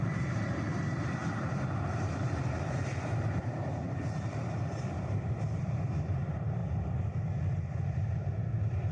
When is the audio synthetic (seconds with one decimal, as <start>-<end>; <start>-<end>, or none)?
0.0-6.6; 7.9-8.9